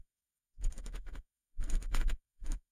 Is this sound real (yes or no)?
no